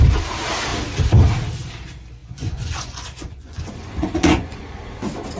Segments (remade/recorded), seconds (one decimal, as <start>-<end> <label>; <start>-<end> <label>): 0.0-2.2 recorded; 2.2-4.8 remade; 4.8-5.4 recorded